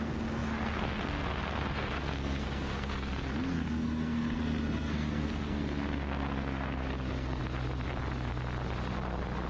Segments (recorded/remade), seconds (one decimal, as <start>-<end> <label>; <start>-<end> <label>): 0.0-7.4 remade; 7.4-9.5 recorded